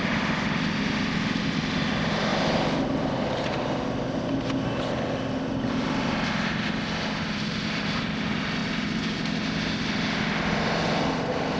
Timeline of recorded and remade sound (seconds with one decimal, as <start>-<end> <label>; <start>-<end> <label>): 0.0-11.6 recorded